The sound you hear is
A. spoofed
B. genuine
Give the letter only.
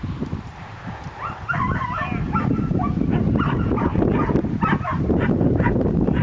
A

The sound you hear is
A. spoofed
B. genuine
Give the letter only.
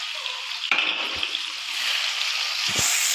B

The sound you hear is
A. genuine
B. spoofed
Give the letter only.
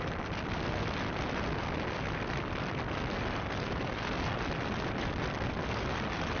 A